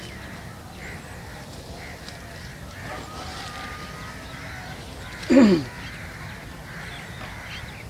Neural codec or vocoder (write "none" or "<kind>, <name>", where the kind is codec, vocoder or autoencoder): none